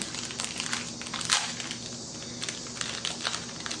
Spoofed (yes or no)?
no